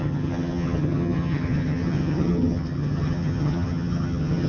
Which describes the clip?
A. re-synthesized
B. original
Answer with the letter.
A